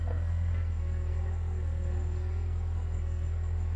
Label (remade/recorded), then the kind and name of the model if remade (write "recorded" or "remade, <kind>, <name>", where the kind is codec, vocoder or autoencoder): remade, codec, SNAC